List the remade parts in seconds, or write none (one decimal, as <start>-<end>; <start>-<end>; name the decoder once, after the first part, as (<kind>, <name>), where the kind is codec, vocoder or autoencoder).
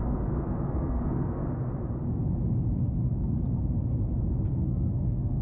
0.0-1.4 (codec, SNAC); 4.6-5.4